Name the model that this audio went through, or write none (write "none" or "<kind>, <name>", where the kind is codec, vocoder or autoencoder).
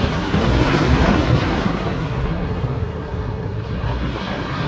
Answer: codec, SNAC